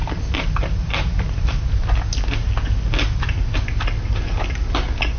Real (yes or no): yes